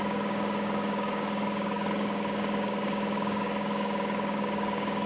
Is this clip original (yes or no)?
no